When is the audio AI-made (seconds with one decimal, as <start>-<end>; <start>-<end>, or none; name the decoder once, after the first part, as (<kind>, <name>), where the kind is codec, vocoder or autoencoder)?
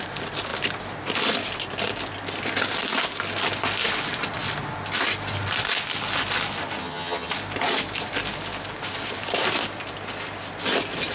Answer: 6.8-7.3 (vocoder, HiFi-GAN)